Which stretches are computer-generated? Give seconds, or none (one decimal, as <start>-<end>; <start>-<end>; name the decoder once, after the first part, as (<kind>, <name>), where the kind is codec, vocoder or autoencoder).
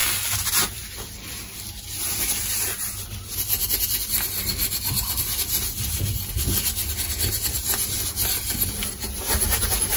none